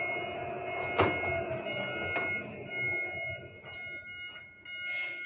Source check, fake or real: real